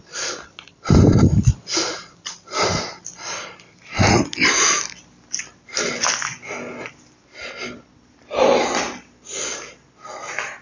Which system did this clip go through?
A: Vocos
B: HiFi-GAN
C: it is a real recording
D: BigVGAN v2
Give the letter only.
C